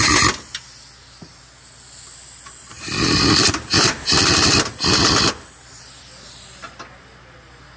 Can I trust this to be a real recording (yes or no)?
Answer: yes